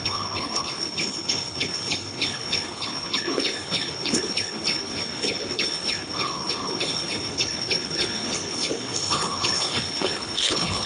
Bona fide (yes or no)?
no